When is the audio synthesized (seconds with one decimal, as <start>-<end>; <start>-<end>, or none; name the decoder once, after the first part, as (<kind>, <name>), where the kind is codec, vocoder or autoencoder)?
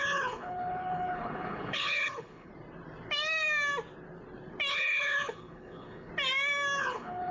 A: 0.0-2.5 (codec, HILCodec); 4.7-6.1; 6.8-7.3